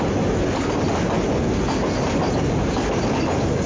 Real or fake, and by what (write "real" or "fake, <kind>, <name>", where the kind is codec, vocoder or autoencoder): real